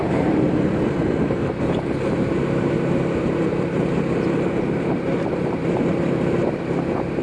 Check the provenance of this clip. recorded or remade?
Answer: remade